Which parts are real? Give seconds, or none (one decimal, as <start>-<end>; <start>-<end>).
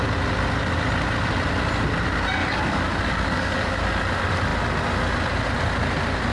0.0-2.4; 3.8-6.3